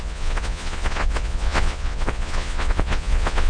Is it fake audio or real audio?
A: fake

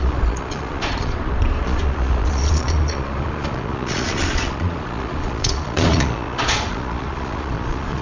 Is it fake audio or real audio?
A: fake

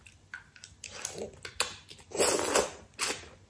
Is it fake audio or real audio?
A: real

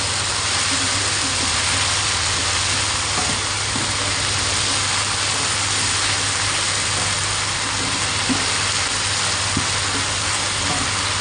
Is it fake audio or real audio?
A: real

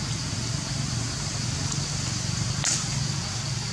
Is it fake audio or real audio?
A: real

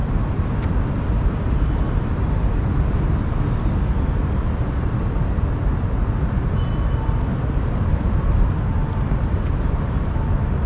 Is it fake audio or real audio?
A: real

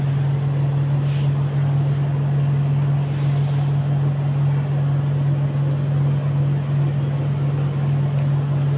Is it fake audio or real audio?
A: real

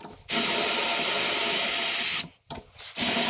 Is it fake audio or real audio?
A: real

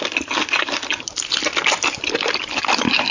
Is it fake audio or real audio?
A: real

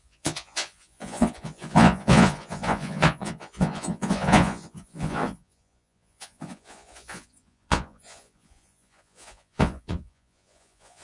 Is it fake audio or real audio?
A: fake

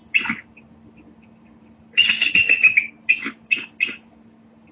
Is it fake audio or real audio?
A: real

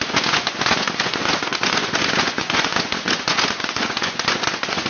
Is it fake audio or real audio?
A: fake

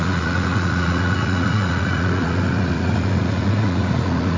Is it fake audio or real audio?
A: fake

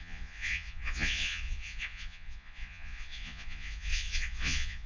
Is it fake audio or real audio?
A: fake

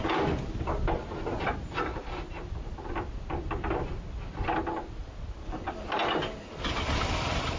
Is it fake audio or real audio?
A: real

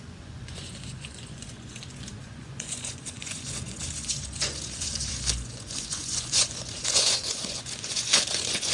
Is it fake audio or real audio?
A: fake